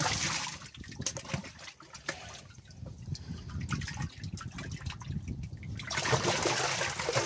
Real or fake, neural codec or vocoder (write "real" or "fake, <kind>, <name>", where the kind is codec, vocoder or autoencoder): real